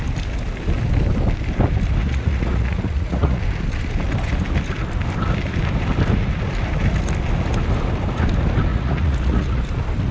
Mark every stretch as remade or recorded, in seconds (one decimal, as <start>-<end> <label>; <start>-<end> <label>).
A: 0.0-2.0 recorded; 2.0-3.4 remade; 3.4-8.7 recorded; 8.7-9.6 remade; 9.6-10.1 recorded

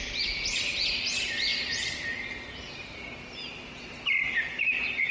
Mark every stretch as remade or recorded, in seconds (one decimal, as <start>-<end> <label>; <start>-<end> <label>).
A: 0.0-5.1 recorded

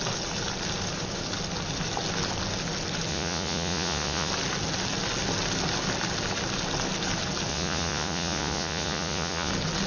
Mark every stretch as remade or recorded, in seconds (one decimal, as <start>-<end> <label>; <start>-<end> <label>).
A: 0.0-3.1 recorded; 3.1-4.3 remade; 4.3-7.5 recorded; 7.5-9.5 remade; 9.5-9.9 recorded

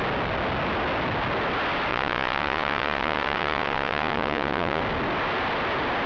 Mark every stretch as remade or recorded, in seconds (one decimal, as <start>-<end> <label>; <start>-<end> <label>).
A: 0.0-1.9 recorded; 1.9-4.8 remade; 4.8-6.1 recorded

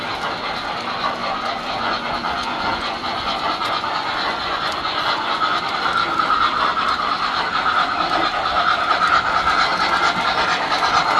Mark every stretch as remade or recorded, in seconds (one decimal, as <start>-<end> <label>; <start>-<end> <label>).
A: 0.0-1.2 recorded; 1.2-5.6 remade; 5.6-11.2 recorded